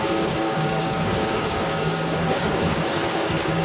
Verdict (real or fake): fake